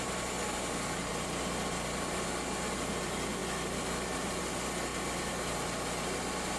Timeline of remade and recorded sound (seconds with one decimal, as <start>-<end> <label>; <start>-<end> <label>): 0.0-6.6 recorded